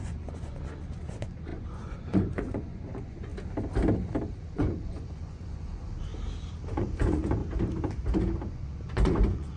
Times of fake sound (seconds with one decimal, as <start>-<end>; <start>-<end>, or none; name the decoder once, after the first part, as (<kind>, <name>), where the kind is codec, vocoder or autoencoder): 0.0-3.3 (vocoder, Vocos); 4.5-6.1; 6.7-7.4; 8.5-9.6